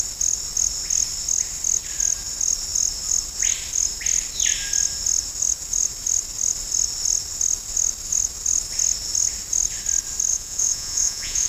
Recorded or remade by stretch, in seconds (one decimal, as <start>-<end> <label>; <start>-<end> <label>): 0.0-10.3 recorded; 10.3-11.5 remade